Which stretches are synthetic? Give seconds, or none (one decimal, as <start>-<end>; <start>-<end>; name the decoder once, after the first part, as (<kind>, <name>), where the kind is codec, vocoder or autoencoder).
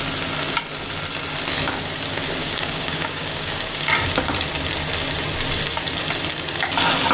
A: 2.4-3.9 (codec, DAC)